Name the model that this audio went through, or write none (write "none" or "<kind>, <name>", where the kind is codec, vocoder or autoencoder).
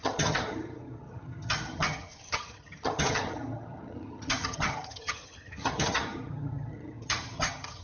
vocoder, HiFi-GAN